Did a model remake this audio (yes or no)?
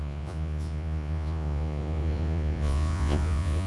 yes